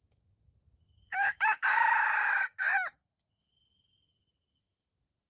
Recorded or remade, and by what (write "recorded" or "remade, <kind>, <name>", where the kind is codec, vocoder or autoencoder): remade, autoencoder, DAC-VAE